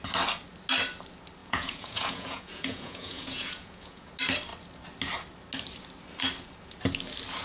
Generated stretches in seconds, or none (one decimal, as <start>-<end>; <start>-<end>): 1.4-4.1